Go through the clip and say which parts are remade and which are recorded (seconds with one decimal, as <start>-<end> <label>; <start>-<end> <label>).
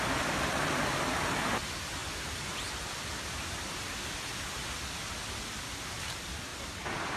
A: 0.0-2.0 recorded; 2.0-4.5 remade; 4.5-7.2 recorded